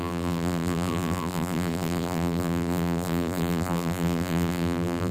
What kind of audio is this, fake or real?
fake